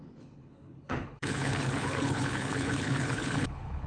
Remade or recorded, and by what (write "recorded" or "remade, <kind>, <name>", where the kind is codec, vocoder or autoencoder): remade, codec, HILCodec